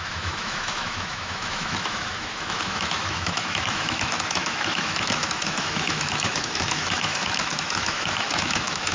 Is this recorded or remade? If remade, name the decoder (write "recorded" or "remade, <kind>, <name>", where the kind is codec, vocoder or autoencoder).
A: remade, autoencoder, DAC-VAE